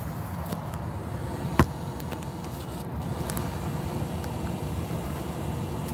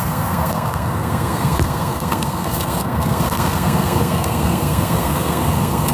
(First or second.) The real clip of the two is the first